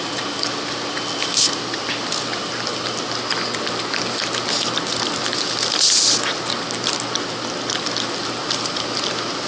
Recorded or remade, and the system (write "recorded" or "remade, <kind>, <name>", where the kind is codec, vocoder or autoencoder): recorded